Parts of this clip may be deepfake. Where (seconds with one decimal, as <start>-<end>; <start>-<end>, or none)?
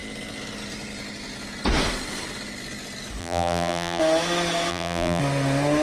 3.2-4.0; 4.7-5.2